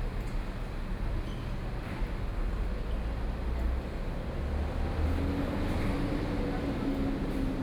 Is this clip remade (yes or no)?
no